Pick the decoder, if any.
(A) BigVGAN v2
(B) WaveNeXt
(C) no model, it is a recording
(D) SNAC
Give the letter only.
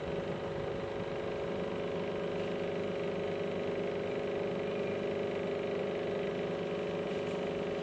C